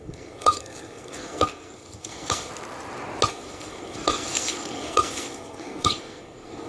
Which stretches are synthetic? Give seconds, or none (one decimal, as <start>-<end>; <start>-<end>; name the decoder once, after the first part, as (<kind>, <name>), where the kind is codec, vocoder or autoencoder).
0.0-2.5 (codec, SNAC); 3.3-6.7